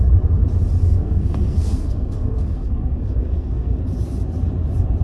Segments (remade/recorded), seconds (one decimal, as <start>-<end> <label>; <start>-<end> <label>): 0.0-0.8 recorded; 0.8-3.8 remade; 3.8-5.0 recorded